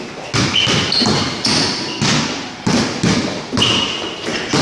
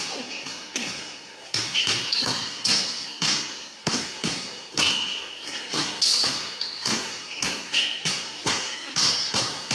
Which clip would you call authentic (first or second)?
first